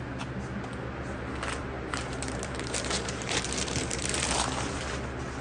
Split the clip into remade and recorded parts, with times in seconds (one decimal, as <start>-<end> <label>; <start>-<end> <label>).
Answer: 0.0-1.6 recorded; 1.6-4.8 remade; 4.8-5.4 recorded